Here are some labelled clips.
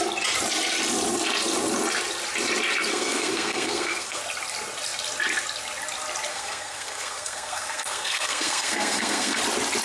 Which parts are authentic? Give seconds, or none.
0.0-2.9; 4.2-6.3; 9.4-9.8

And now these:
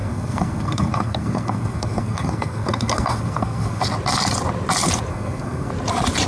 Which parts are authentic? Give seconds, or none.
3.8-5.1; 5.7-6.3

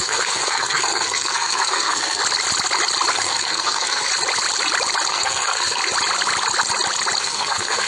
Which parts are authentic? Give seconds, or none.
2.2-3.1; 4.1-5.1; 5.8-7.2

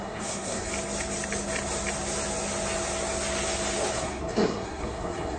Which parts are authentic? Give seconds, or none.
0.7-3.9